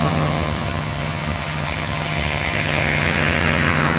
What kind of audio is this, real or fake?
fake